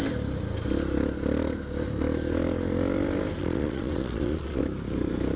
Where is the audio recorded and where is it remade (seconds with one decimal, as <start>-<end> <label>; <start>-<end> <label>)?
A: 0.0-3.4 recorded; 3.4-4.6 remade; 4.6-5.4 recorded